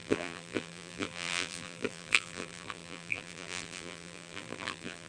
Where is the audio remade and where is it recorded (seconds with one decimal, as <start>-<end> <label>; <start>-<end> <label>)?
0.0-5.1 remade